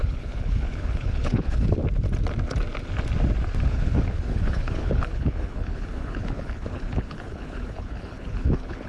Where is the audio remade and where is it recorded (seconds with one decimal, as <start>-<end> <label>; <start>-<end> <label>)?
0.0-1.8 remade; 1.8-3.7 recorded; 3.7-8.9 remade